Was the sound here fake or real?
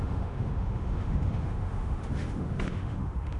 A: fake